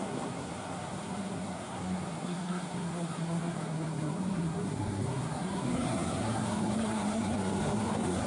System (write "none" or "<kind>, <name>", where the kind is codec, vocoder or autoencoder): codec, SNAC